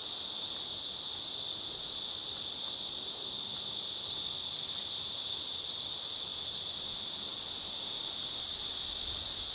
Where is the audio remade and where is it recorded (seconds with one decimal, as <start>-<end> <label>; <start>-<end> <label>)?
0.0-6.3 recorded; 6.3-7.5 remade; 7.5-9.5 recorded